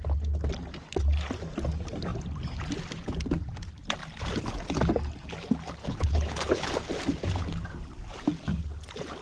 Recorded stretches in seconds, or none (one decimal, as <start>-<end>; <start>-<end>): 0.0-5.8; 6.7-9.2